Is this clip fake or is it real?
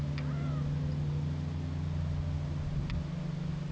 real